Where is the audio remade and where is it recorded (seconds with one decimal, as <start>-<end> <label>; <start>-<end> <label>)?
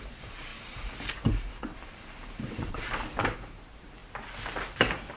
0.0-4.0 remade; 4.0-4.6 recorded; 4.6-5.2 remade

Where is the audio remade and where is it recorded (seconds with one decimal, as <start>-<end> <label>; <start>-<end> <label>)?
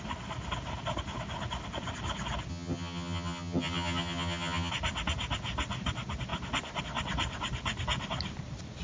0.0-2.5 recorded; 2.5-4.7 remade; 4.7-8.8 recorded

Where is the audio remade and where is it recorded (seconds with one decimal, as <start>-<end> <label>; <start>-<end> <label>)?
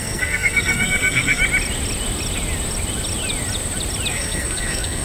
0.0-1.4 remade; 1.4-4.1 recorded; 4.1-5.0 remade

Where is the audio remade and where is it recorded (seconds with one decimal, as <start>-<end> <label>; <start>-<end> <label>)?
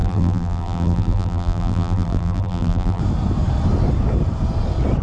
0.0-3.0 remade; 3.0-5.0 recorded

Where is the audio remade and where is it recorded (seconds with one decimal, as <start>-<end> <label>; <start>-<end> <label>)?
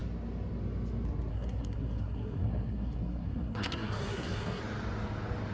0.0-1.3 recorded; 1.3-4.6 remade; 4.6-5.5 recorded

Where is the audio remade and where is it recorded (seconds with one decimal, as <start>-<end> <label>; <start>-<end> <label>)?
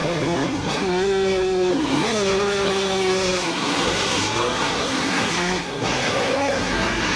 0.0-7.2 remade